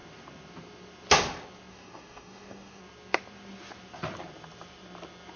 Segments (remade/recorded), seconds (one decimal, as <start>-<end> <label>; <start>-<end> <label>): 0.0-1.7 recorded; 1.7-2.8 remade; 2.8-5.4 recorded